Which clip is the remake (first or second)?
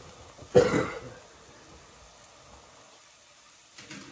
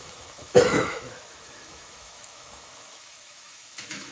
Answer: second